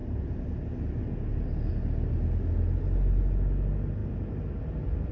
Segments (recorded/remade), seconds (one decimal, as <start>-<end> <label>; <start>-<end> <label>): 0.0-5.1 recorded